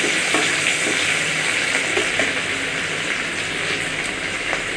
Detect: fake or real real